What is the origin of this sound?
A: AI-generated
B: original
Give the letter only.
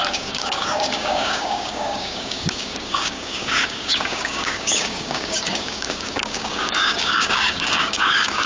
A